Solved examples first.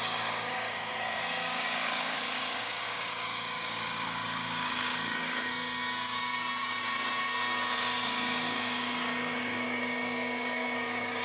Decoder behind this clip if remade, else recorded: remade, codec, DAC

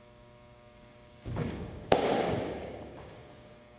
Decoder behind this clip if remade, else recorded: remade, codec, DAC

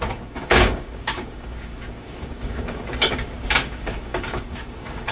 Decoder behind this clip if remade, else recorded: remade, codec, DAC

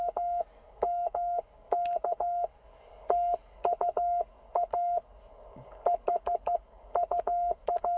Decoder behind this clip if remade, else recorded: remade, codec, DAC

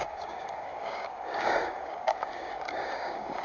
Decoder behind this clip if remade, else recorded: remade, codec, DAC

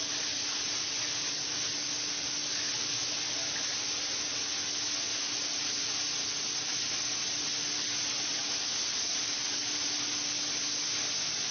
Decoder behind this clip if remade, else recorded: recorded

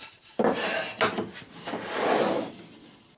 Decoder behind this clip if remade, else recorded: recorded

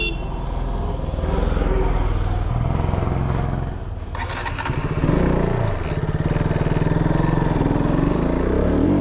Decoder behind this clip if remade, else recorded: recorded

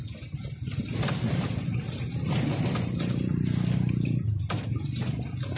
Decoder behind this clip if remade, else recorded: recorded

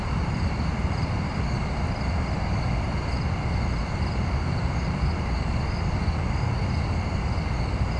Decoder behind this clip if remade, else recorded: recorded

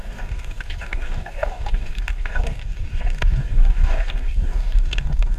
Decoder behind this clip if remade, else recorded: remade, codec, DAC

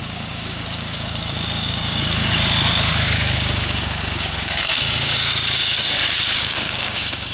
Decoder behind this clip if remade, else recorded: remade, codec, DAC